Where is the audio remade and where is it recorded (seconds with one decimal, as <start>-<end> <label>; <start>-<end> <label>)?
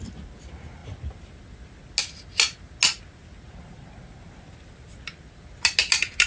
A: 0.0-6.3 recorded